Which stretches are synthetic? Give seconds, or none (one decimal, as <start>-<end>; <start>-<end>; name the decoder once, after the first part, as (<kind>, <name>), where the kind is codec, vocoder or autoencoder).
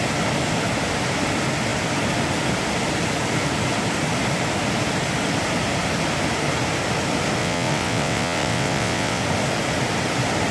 7.4-9.2 (vocoder, WaveNeXt)